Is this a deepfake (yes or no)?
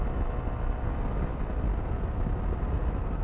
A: no